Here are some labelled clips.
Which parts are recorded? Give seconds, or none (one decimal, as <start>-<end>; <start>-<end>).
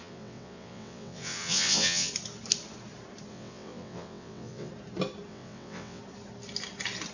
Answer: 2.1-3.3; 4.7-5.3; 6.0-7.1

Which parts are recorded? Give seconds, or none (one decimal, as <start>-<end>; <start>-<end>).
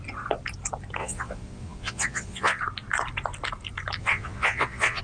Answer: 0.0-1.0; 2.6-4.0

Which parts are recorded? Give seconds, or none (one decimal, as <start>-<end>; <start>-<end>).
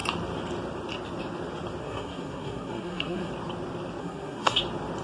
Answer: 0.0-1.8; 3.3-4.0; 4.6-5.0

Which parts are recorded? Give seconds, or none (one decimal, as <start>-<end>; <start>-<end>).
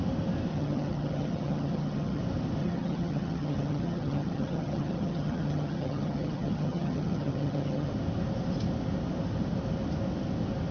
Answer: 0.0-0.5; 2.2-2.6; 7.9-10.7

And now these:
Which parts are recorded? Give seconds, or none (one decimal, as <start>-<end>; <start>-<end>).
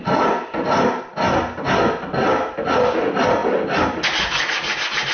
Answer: 0.0-5.1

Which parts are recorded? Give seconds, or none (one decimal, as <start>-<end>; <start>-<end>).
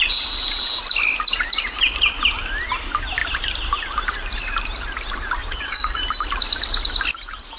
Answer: 0.0-5.4; 6.0-7.6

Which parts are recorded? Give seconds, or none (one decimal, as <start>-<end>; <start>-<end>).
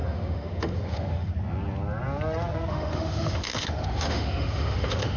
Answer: 1.3-2.7